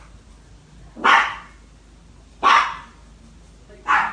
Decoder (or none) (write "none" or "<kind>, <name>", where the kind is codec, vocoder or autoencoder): none